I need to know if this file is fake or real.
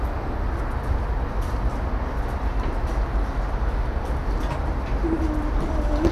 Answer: real